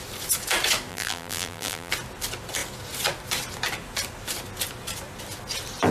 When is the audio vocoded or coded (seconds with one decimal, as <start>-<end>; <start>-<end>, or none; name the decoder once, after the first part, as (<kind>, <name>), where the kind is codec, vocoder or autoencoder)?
0.9-1.9 (vocoder, BigVGAN v2)